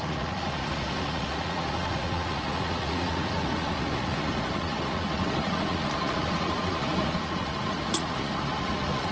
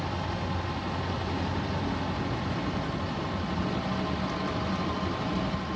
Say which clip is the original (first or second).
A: second